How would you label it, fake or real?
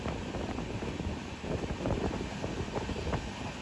real